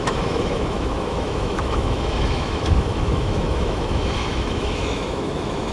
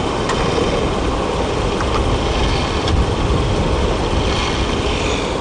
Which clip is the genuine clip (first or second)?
second